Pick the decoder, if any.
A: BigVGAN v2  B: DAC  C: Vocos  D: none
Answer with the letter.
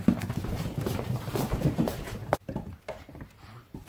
A